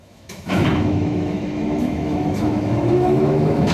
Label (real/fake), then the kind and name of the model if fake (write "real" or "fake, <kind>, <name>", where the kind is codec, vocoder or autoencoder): fake, autoencoder, DAC-VAE